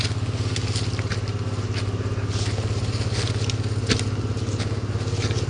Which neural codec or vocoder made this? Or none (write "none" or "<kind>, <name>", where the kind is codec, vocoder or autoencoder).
none